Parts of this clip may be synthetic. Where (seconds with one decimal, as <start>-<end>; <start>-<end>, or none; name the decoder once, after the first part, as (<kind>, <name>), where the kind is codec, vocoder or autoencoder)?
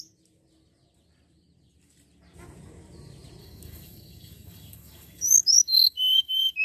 3.4-6.6 (codec, DAC)